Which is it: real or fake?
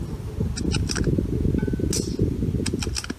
real